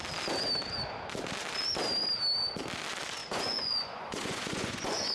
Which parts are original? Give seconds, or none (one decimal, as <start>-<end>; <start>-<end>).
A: 0.0-3.2